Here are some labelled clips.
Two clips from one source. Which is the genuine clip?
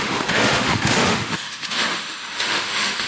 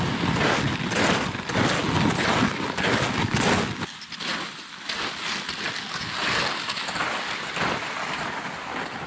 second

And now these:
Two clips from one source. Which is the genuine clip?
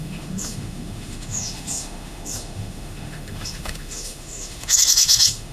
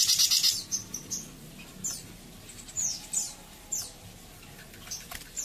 second